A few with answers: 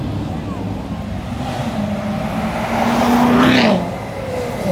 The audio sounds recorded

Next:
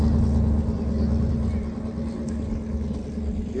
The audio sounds recorded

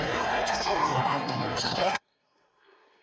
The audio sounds remade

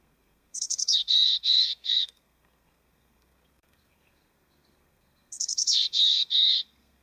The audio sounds remade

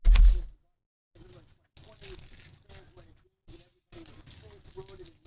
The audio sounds recorded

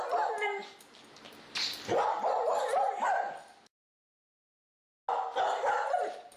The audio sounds recorded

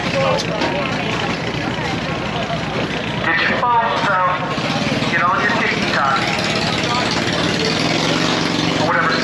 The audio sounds recorded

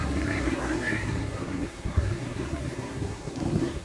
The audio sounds remade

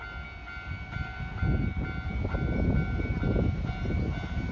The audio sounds recorded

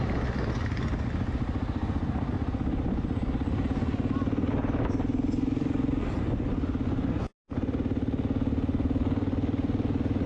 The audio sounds recorded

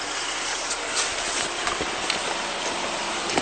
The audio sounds recorded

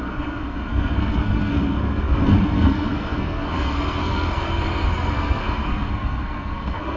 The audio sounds remade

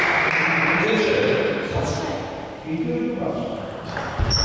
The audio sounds recorded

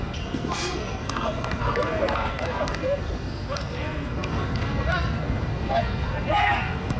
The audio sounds remade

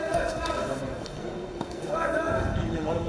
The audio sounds remade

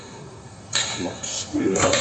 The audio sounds remade